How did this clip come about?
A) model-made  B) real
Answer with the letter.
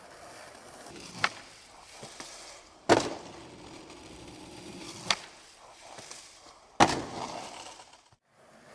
B